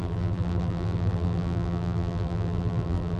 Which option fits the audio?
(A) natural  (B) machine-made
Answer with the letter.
B